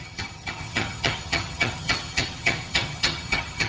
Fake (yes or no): yes